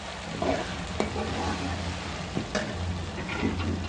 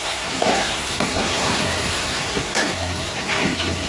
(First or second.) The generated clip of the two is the second